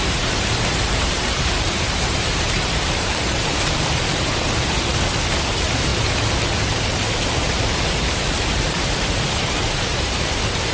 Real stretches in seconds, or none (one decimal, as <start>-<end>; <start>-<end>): 4.9-5.4; 5.9-6.7